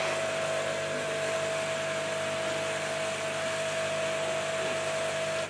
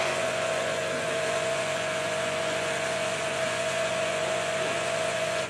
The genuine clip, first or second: first